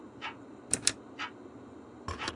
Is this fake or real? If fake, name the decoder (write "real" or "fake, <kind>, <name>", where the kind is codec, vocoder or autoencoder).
real